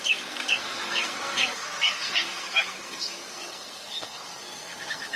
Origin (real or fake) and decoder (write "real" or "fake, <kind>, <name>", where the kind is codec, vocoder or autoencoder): fake, codec, SNAC